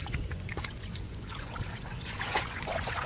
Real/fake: fake